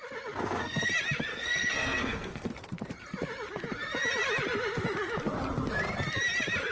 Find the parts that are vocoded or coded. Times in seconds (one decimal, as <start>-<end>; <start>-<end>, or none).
0.4-0.9; 1.3-2.5